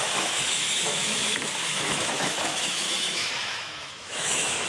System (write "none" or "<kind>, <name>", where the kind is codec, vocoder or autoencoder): autoencoder, DAC-VAE